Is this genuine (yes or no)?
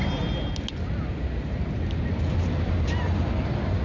yes